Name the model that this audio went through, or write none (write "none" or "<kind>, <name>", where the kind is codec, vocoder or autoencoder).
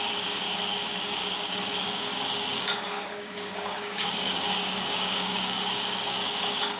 codec, DAC